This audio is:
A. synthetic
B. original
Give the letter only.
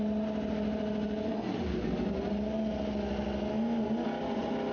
B